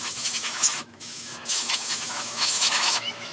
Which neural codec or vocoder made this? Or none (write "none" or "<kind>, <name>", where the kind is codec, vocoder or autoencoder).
autoencoder, DAC-VAE